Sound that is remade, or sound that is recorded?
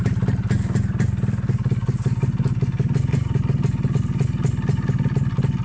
recorded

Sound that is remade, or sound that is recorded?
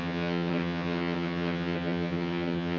remade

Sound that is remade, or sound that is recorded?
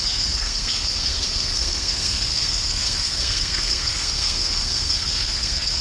remade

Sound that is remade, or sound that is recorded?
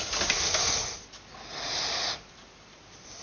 recorded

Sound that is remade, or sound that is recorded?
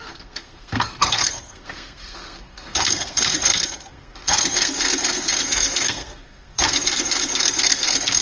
remade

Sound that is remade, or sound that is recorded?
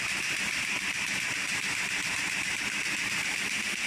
remade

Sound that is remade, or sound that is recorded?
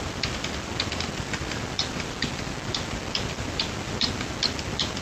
recorded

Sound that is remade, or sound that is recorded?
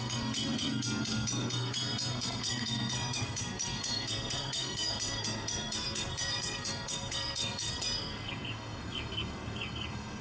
remade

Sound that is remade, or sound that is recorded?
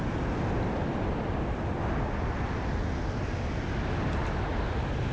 recorded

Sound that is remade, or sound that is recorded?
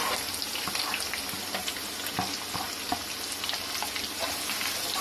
recorded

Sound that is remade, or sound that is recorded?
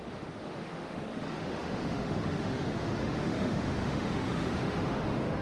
remade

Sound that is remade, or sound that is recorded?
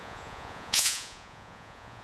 remade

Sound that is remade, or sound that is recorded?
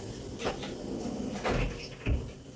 recorded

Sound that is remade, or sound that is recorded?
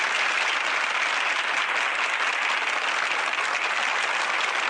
recorded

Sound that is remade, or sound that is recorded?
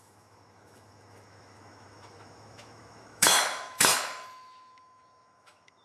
remade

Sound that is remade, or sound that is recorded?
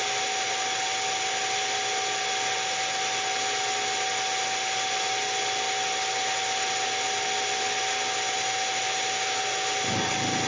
recorded